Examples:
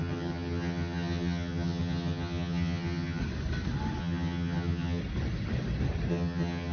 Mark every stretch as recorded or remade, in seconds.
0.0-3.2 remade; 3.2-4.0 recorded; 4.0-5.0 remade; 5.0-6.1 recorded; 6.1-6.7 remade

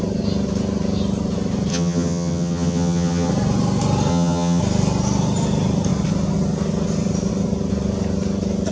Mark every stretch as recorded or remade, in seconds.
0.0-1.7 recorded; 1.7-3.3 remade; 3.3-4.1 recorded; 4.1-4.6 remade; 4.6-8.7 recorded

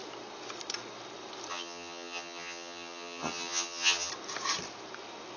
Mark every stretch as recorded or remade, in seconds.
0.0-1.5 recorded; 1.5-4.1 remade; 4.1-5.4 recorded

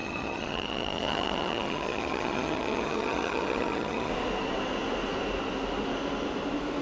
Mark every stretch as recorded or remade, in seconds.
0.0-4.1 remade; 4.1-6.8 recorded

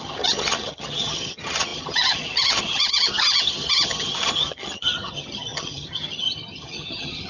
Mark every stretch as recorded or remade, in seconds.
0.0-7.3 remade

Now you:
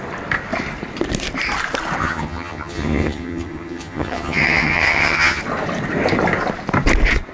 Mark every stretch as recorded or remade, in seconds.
0.0-2.0 recorded; 2.0-5.4 remade; 5.4-7.3 recorded